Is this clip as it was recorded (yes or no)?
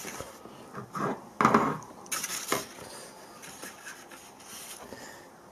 yes